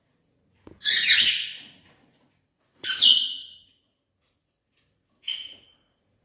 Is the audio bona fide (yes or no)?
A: no